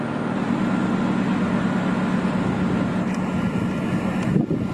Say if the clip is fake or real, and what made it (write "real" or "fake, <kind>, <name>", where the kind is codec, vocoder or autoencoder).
real